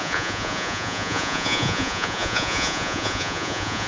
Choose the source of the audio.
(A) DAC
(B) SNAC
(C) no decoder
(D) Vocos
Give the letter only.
D